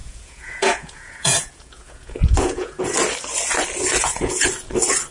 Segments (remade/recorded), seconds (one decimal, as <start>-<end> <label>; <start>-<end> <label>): 0.0-2.8 remade; 2.8-4.0 recorded; 4.0-4.5 remade; 4.5-5.1 recorded